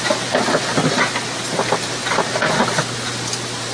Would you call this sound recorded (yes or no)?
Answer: yes